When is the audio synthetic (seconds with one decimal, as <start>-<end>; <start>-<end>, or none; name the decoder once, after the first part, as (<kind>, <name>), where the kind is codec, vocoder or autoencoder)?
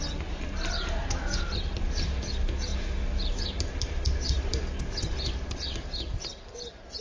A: none